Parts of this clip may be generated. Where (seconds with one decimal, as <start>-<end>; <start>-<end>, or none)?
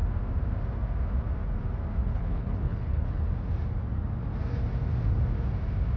2.0-3.3